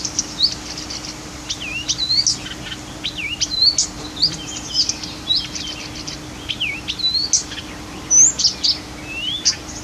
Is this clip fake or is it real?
real